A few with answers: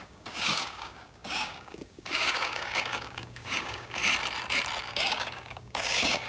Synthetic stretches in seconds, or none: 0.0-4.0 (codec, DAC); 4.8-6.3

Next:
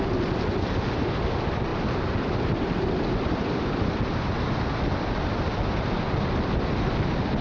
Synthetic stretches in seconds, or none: none

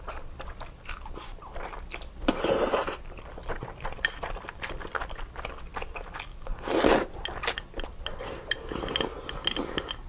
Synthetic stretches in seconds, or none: none

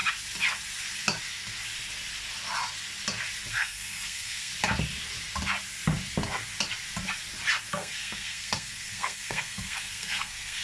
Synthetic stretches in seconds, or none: 3.5-4.5 (codec, SNAC); 7.7-10.6

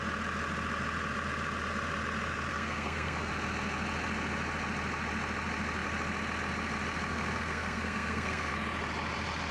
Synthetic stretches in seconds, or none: 2.5-3.3 (codec, SNAC); 7.1-8.5

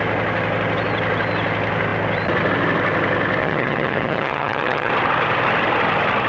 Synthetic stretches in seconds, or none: 3.4-4.9 (vocoder, HiFi-GAN)

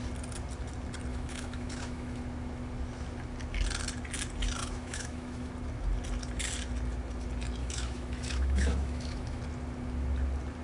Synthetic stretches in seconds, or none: 1.1-2.2 (autoencoder, DAC-VAE); 4.6-5.5; 7.6-9.4